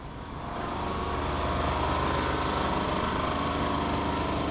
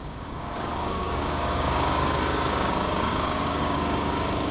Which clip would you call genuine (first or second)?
first